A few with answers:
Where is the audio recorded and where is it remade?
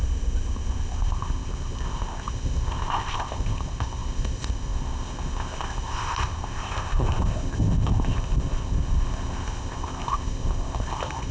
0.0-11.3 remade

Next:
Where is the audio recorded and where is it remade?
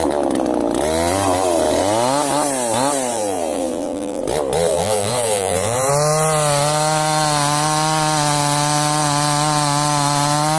0.0-3.1 recorded; 3.1-4.2 remade; 4.2-4.7 recorded; 4.7-5.9 remade; 5.9-10.6 recorded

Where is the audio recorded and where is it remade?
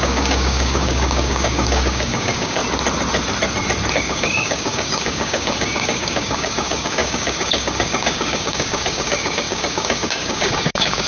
0.0-2.6 remade; 2.6-3.9 recorded; 3.9-11.1 remade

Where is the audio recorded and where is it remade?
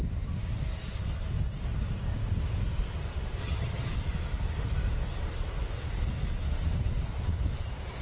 0.0-3.4 recorded; 3.4-3.9 remade; 3.9-8.0 recorded